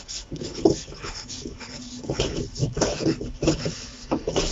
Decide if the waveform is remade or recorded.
remade